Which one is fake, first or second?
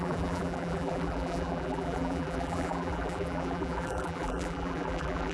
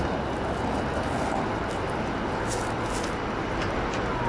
first